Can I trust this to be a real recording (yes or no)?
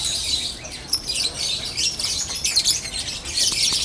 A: no